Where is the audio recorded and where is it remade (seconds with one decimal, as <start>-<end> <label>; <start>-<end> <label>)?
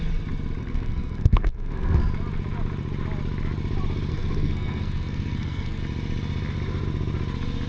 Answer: 0.0-0.6 recorded; 0.6-2.0 remade; 2.0-4.1 recorded; 4.1-5.8 remade; 5.8-7.7 recorded